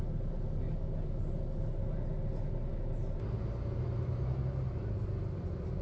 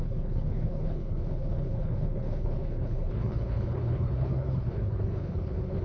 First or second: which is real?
first